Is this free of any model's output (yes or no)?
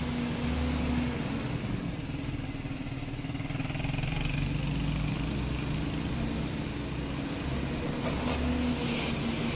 yes